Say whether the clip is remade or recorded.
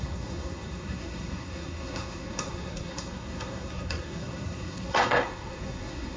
remade